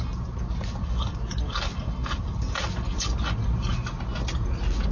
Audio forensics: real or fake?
real